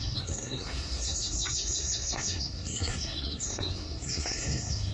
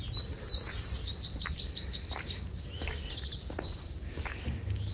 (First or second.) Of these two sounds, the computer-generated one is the first